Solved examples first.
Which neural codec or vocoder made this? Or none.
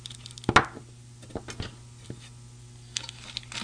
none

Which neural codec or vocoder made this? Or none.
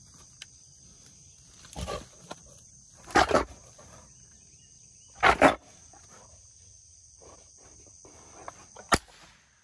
none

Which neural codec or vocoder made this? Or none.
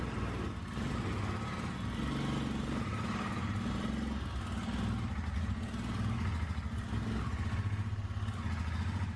none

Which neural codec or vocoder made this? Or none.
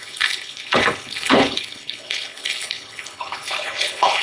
codec, HILCodec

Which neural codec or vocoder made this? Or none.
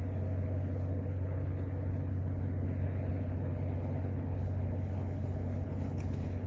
codec, HILCodec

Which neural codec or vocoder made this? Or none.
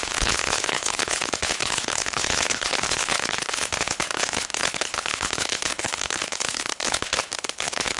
codec, HILCodec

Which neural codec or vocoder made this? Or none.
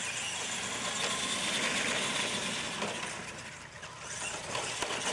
none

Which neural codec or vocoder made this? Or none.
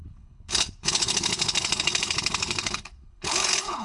codec, HILCodec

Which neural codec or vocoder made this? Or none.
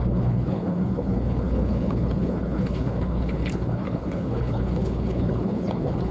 codec, HILCodec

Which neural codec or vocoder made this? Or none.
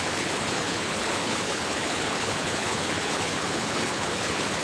codec, HILCodec